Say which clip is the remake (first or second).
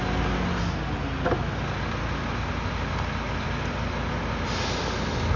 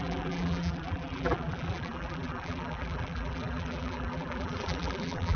second